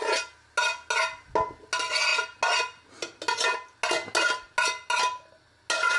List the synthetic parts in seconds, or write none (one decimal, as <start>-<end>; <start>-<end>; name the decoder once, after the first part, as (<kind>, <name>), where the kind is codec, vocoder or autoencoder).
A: none